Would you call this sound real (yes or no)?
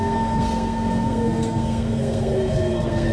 no